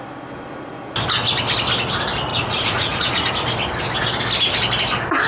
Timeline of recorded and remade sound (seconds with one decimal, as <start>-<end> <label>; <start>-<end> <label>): 0.0-2.3 recorded; 2.3-3.3 remade; 3.3-5.3 recorded